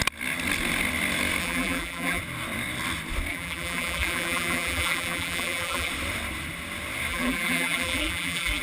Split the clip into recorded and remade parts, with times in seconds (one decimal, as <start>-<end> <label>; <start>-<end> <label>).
0.0-1.4 recorded; 1.4-2.2 remade; 2.2-3.3 recorded; 3.3-5.9 remade; 5.9-7.1 recorded; 7.1-8.6 remade